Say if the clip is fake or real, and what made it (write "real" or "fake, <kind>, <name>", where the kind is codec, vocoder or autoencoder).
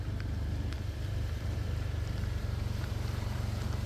fake, vocoder, BigVGAN v2